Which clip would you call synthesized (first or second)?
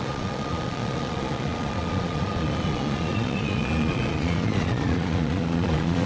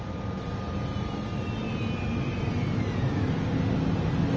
first